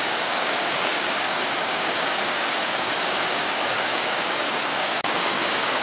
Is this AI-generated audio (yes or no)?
yes